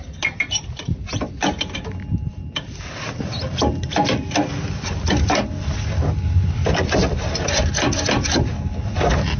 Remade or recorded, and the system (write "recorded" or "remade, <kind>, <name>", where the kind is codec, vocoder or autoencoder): recorded